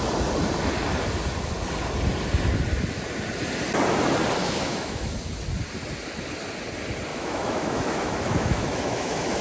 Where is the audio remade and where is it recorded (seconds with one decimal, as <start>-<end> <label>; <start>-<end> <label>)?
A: 0.0-4.4 recorded; 4.4-5.1 remade; 5.1-7.1 recorded; 7.1-9.4 remade